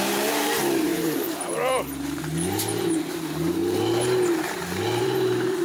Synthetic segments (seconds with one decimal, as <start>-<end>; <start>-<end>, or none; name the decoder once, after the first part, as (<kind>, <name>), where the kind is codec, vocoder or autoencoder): 0.0-3.6 (vocoder, BigVGAN v2); 5.0-5.6